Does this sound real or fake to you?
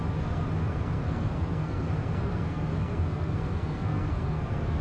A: fake